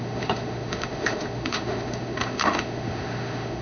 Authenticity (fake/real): fake